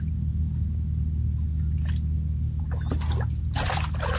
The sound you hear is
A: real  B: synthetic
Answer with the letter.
A